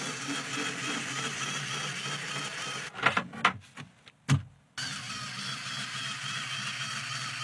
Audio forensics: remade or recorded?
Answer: recorded